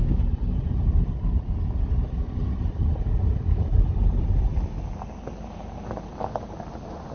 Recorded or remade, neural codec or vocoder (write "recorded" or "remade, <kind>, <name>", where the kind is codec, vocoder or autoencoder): recorded